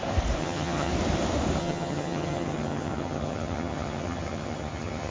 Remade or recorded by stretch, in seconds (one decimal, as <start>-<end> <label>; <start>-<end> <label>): 0.0-0.4 recorded; 0.4-0.9 remade; 0.9-1.6 recorded; 1.6-5.1 remade